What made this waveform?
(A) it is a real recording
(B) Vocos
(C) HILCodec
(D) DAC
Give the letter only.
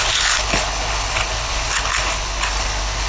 C